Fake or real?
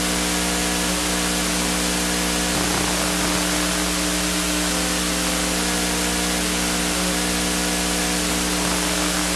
real